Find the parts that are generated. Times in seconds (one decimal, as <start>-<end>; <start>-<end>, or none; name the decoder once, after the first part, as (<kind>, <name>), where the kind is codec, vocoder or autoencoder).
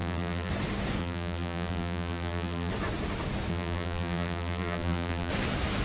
0.0-0.5 (vocoder, BigVGAN v2); 1.0-2.7; 3.5-5.3